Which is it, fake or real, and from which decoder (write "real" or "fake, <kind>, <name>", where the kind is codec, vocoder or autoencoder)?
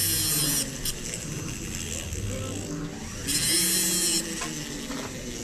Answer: real